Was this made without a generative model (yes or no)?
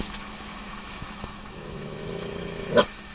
no